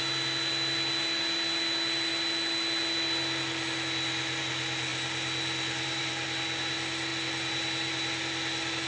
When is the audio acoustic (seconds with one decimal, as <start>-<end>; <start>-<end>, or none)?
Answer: 0.0-8.9